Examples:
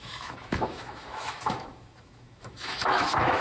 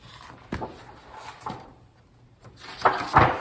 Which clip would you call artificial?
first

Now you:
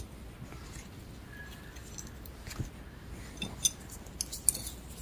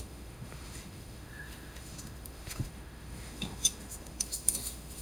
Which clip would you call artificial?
second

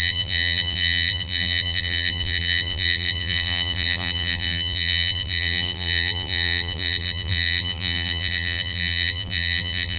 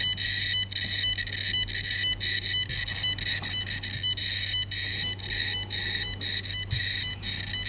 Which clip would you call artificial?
first